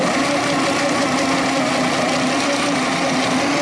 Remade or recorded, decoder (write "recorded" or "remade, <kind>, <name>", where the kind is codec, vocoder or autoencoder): recorded